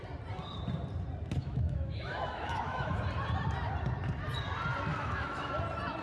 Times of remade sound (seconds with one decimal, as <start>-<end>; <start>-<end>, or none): 1.4-3.0; 4.9-5.5